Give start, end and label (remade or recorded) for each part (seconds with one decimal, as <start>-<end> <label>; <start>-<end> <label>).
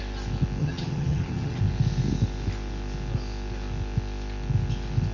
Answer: 0.0-0.6 recorded; 0.6-1.6 remade; 1.6-5.1 recorded